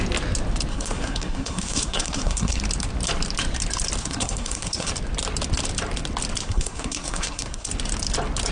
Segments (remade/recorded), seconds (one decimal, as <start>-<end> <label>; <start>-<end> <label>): 0.0-0.7 recorded; 0.7-2.6 remade; 2.6-4.0 recorded; 4.0-4.9 remade; 4.9-6.4 recorded; 6.4-7.7 remade; 7.7-8.5 recorded

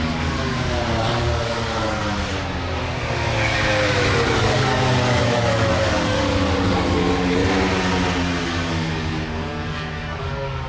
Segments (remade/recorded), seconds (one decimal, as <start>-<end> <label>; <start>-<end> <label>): 0.0-2.0 remade; 2.0-2.8 recorded; 2.8-7.4 remade; 7.4-8.4 recorded; 8.4-10.7 remade

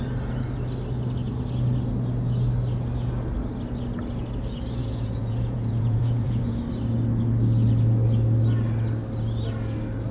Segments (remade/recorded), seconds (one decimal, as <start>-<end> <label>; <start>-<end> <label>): 0.0-4.8 recorded; 4.8-6.6 remade; 6.6-10.1 recorded

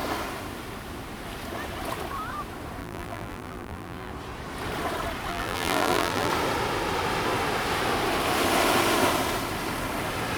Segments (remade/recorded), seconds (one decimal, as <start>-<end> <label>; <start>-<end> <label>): 0.0-2.8 recorded; 2.8-4.1 remade; 4.1-5.3 recorded; 5.3-6.3 remade; 6.3-10.4 recorded

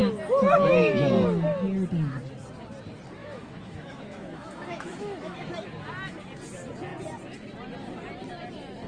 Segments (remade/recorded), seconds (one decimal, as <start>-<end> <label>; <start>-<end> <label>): 0.0-3.2 recorded; 3.2-5.5 remade; 5.5-8.9 recorded

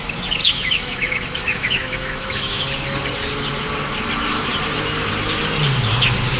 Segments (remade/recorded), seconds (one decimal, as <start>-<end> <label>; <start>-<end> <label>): 0.0-0.4 recorded; 0.4-2.6 remade; 2.6-6.4 recorded

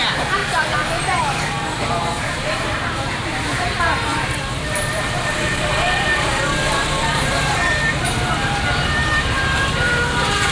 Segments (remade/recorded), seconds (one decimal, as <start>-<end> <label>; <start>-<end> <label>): 0.0-0.4 remade; 0.4-1.0 recorded; 1.0-10.5 remade

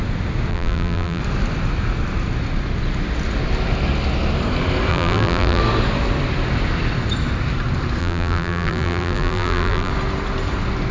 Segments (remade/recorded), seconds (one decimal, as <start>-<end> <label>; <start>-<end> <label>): 0.0-0.5 recorded; 0.5-1.2 remade; 1.2-4.9 recorded; 4.9-5.6 remade; 5.6-8.0 recorded; 8.0-9.9 remade; 9.9-10.9 recorded